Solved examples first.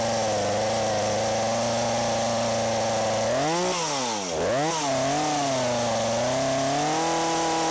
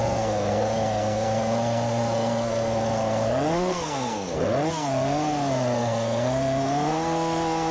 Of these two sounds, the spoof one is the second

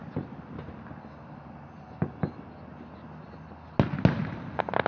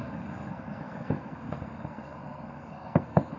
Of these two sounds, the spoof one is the second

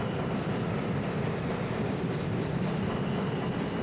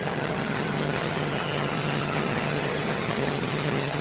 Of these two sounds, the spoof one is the second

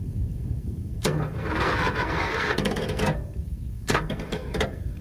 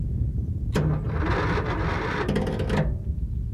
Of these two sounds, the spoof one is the first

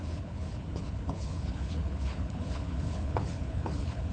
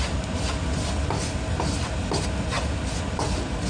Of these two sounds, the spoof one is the first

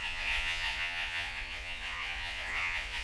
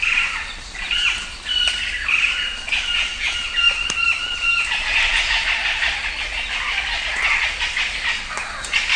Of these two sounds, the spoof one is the first